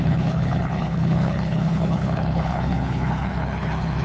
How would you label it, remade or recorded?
remade